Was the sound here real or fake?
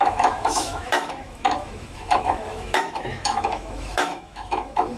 fake